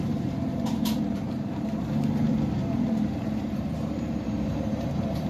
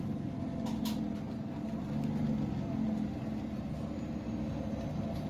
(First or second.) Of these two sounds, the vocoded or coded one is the first